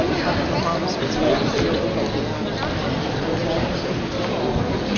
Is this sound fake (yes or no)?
no